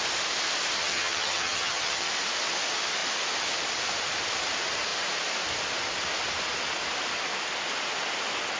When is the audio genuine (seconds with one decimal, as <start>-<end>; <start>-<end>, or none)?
0.0-0.8; 2.1-8.6